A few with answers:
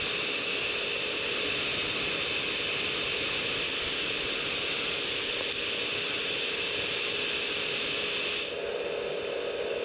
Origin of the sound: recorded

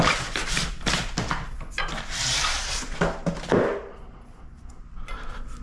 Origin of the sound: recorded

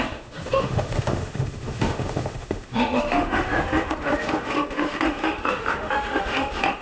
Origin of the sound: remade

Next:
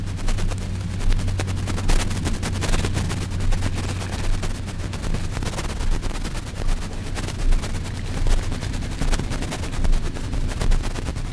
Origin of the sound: recorded